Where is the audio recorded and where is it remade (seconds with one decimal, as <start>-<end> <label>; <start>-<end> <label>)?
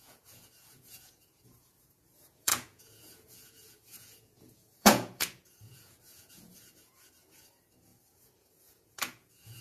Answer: 0.0-9.6 remade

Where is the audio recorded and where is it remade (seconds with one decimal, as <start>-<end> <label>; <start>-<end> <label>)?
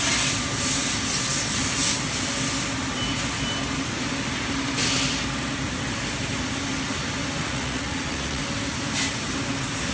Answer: 0.0-7.4 recorded; 7.4-8.4 remade; 8.4-9.9 recorded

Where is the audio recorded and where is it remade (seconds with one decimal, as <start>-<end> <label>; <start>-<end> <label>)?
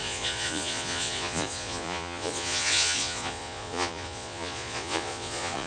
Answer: 0.0-5.7 remade